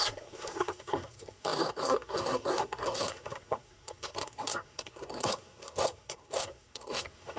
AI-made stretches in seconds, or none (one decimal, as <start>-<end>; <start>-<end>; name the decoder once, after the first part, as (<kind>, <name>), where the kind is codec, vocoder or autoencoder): 0.0-7.4 (codec, SNAC)